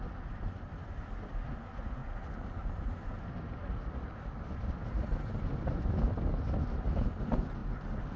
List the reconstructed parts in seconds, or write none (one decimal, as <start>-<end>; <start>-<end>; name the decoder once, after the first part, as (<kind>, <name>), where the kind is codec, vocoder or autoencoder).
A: none